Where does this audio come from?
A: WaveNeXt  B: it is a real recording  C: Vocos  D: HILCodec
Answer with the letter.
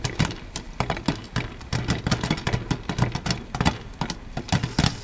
B